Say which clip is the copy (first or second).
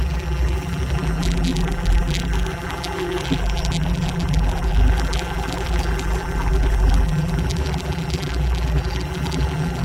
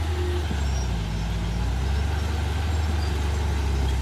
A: first